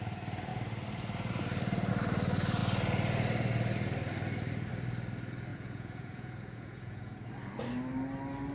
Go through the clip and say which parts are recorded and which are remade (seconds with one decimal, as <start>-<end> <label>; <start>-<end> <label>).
0.0-5.5 recorded; 5.5-7.3 remade; 7.3-8.5 recorded

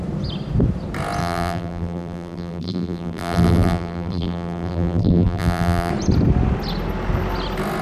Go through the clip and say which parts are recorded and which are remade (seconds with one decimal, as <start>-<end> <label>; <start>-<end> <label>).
0.0-1.2 recorded; 1.2-5.9 remade; 5.9-7.8 recorded